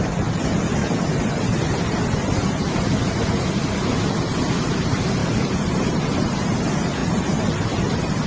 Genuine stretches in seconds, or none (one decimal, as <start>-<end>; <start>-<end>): 0.0-8.3